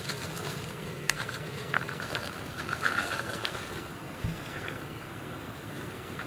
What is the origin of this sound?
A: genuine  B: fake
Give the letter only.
B